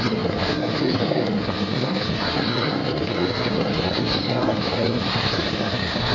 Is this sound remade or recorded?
remade